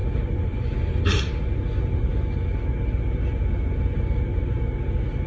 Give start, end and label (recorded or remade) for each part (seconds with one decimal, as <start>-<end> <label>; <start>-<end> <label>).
0.0-1.5 remade; 1.5-5.3 recorded